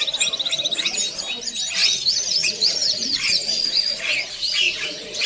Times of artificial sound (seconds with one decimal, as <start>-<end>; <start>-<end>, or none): 1.8-5.3